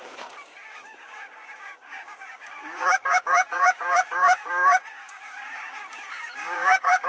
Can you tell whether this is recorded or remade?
remade